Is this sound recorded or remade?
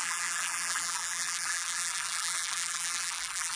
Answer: remade